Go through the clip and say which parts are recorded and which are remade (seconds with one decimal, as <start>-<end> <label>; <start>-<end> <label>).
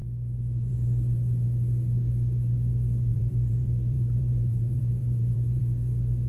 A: 0.0-3.1 recorded; 3.1-5.6 remade; 5.6-6.3 recorded